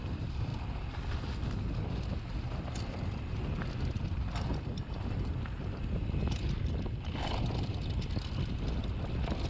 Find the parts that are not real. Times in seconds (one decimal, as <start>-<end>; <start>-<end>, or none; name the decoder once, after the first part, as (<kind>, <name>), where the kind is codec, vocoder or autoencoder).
none